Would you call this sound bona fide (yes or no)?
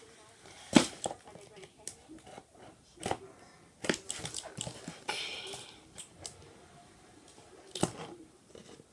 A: yes